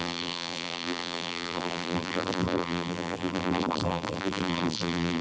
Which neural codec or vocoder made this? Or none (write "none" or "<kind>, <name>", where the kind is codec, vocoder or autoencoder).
vocoder, BigVGAN v2